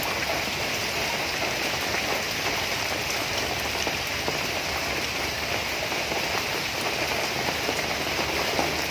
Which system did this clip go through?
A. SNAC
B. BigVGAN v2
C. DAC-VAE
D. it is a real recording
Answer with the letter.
D